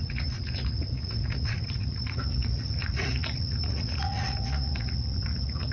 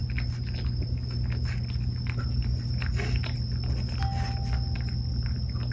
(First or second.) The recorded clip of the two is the second